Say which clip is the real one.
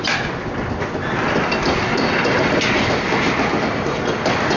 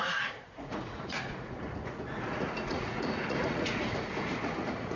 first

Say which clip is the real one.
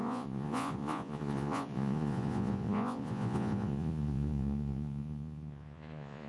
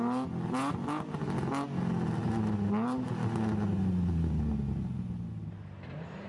second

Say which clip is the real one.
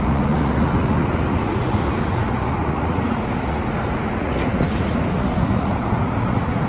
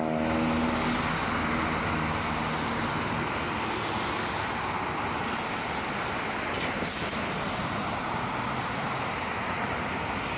second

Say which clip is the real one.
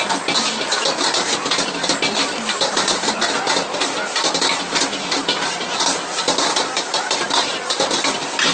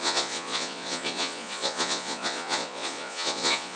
first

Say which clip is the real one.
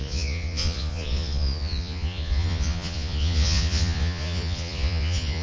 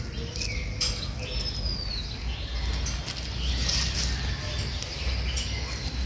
second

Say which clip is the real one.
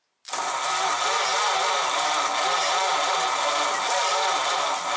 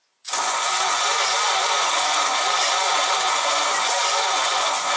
first